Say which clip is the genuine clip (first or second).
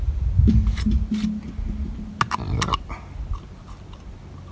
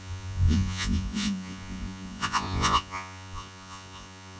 first